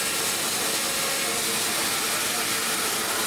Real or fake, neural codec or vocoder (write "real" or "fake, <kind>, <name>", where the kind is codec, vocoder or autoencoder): real